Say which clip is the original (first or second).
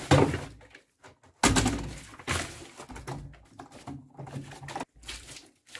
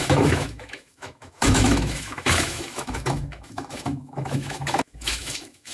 first